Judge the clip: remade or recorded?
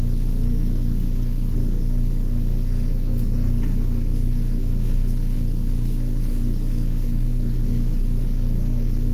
remade